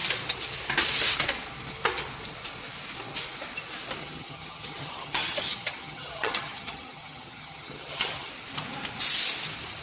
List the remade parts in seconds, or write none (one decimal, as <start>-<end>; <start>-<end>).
4.0-8.3